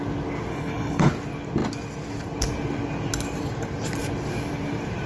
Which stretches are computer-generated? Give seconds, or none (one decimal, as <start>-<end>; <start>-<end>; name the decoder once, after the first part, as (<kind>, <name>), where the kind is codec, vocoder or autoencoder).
0.5-1.1 (codec, HILCodec)